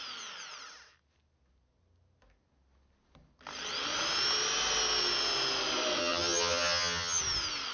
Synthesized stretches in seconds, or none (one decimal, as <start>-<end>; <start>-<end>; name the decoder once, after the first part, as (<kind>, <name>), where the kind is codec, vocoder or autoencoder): 6.0-7.2 (vocoder, HiFi-GAN)